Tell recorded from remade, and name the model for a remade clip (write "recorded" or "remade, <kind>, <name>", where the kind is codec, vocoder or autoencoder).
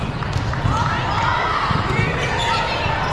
recorded